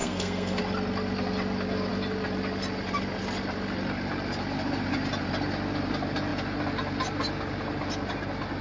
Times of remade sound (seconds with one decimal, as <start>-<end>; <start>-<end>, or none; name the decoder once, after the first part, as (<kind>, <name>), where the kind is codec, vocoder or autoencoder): 0.0-0.6 (codec, SNAC)